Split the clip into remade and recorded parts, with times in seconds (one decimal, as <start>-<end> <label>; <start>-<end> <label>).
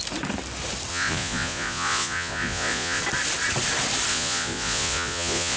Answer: 0.0-0.9 recorded; 0.9-3.0 remade; 3.0-4.1 recorded; 4.1-5.6 remade